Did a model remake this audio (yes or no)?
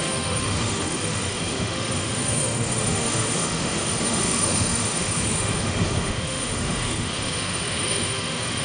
yes